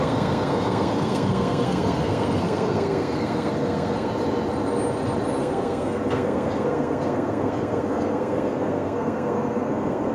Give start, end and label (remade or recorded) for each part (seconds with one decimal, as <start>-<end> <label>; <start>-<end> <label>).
0.0-4.1 remade; 4.1-5.4 recorded; 5.4-10.1 remade